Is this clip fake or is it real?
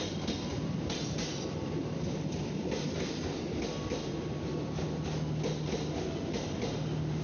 real